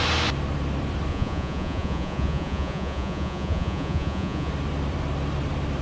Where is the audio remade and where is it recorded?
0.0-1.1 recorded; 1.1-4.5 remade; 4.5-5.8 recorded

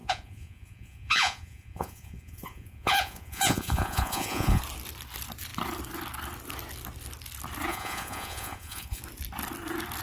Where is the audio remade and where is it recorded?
0.0-4.6 remade; 4.6-7.7 recorded; 7.7-9.0 remade; 9.0-10.0 recorded

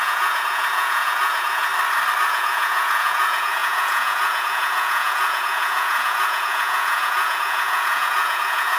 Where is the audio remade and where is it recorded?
0.0-1.7 remade; 1.7-2.2 recorded; 2.2-8.8 remade

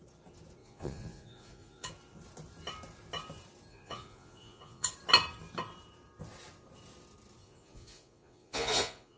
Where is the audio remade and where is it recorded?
0.0-0.6 recorded; 0.6-1.9 remade; 1.9-3.7 recorded; 3.7-4.9 remade; 4.9-7.4 recorded; 7.4-9.2 remade

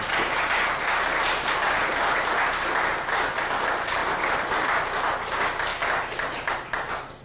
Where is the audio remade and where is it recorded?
0.0-7.2 recorded

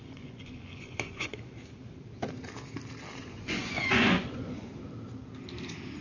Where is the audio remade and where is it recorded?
0.0-1.3 remade; 1.3-3.2 recorded; 3.2-4.7 remade; 4.7-6.0 recorded